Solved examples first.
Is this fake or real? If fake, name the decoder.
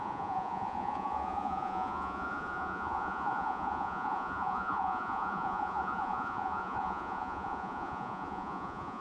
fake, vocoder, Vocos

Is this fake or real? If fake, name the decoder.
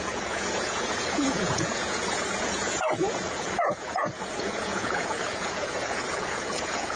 fake, vocoder, Vocos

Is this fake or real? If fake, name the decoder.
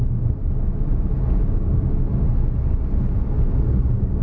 real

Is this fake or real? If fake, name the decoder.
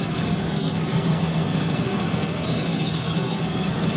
fake, codec, SNAC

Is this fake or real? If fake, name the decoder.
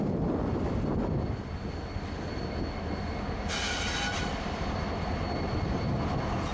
real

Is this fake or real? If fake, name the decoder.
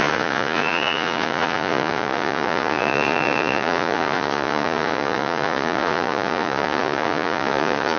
fake, vocoder, Vocos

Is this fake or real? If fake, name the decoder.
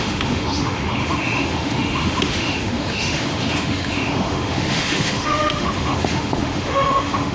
fake, autoencoder, DAC-VAE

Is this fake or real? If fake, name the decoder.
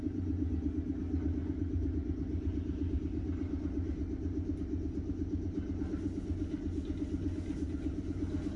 real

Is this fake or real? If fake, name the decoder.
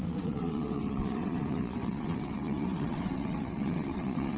fake, vocoder, WaveNeXt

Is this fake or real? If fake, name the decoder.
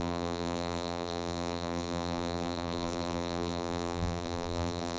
fake, vocoder, BigVGAN v2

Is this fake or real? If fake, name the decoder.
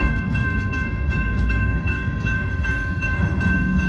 fake, codec, SNAC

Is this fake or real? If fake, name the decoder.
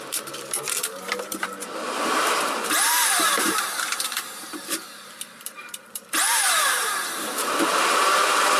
fake, vocoder, BigVGAN v2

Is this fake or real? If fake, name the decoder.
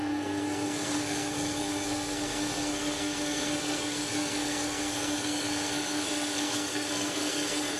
fake, codec, SNAC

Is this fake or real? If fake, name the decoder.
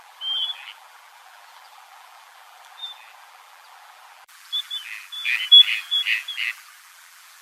fake, vocoder, BigVGAN v2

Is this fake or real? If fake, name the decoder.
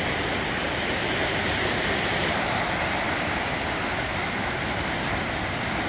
real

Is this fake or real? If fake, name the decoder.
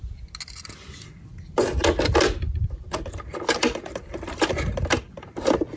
real